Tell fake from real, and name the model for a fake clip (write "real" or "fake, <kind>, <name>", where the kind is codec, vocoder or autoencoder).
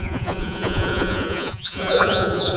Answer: fake, vocoder, Vocos